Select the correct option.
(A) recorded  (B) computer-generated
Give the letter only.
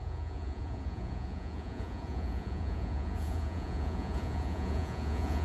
B